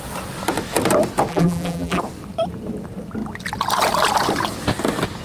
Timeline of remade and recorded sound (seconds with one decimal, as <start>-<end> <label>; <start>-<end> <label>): 0.0-1.3 recorded; 1.3-2.0 remade; 2.0-5.2 recorded